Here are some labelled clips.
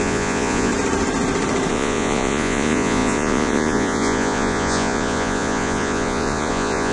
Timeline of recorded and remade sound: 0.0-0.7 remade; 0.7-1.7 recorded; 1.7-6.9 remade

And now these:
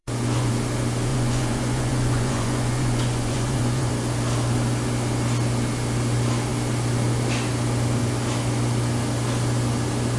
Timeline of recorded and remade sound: 0.0-0.5 remade; 0.5-1.1 recorded; 1.1-3.9 remade; 3.9-10.2 recorded

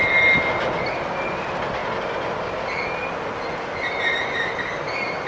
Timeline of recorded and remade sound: 0.0-5.3 recorded